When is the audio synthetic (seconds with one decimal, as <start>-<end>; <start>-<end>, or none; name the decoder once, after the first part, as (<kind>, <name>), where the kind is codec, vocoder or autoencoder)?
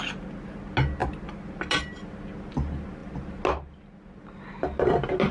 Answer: none